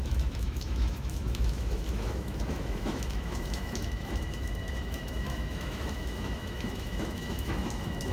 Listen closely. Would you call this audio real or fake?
fake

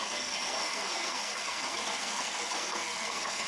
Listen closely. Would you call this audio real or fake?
fake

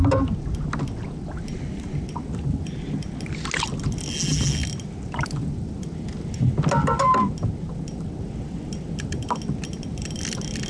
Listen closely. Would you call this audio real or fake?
real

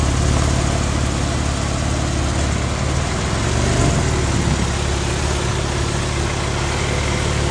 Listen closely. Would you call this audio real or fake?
real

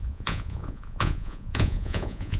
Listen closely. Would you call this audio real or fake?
fake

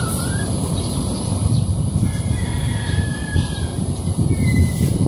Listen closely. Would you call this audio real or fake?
fake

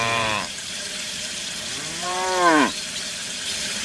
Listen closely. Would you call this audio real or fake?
fake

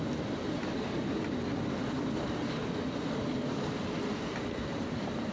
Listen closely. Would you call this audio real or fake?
real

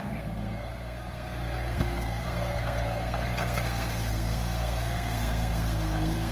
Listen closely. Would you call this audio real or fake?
fake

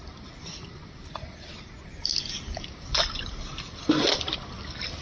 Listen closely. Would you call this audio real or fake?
real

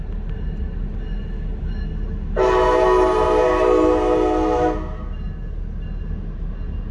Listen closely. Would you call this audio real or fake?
real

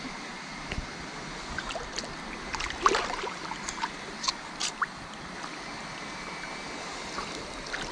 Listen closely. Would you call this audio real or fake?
real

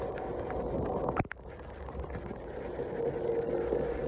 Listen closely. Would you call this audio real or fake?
real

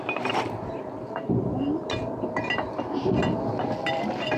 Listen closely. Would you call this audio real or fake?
real